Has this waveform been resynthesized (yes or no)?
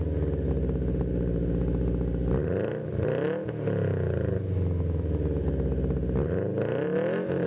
no